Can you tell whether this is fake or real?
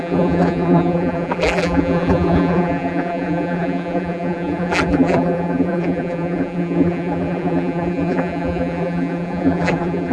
fake